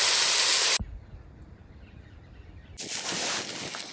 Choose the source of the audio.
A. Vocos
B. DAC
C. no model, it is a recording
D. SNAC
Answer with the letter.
C